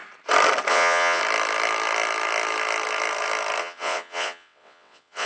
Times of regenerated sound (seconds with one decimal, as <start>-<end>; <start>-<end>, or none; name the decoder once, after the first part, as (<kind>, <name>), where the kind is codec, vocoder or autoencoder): 0.7-1.2 (vocoder, WaveNeXt); 3.6-5.3